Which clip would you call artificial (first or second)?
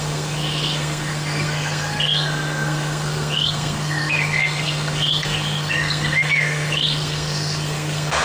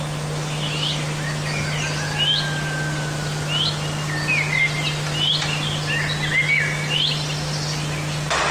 first